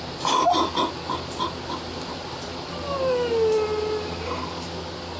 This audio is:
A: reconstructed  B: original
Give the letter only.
B